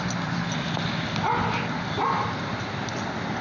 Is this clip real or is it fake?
real